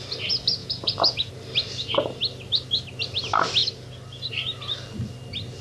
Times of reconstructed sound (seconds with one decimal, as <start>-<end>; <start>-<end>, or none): 0.6-1.3